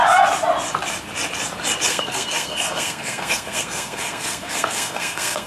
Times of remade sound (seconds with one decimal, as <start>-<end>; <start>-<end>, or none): 1.9-5.5